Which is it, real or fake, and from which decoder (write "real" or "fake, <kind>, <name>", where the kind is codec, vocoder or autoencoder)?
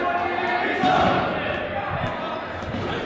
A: real